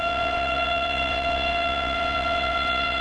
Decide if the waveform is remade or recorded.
remade